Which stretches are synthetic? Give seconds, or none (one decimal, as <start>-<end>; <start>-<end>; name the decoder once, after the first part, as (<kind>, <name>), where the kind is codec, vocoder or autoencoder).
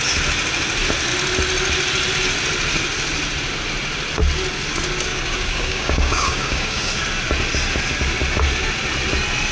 5.1-6.9 (codec, DAC)